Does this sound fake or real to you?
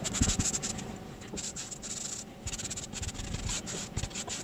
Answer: real